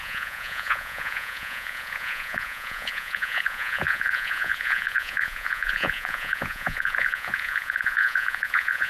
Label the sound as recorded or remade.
remade